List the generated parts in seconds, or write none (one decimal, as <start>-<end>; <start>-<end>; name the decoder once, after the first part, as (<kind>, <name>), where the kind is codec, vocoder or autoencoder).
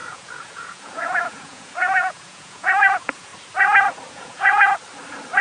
0.0-3.3 (vocoder, Vocos); 4.1-4.7